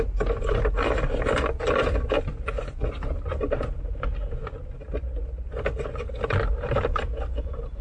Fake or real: real